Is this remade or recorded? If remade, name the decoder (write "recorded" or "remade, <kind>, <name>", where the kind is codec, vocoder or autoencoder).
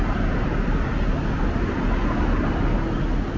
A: recorded